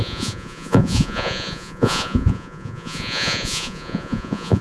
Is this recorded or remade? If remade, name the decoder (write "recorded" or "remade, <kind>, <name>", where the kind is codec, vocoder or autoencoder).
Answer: remade, vocoder, Vocos